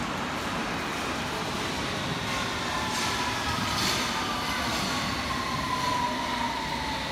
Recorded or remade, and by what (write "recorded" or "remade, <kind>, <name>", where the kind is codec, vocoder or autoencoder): recorded